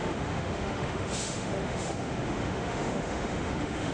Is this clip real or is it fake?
fake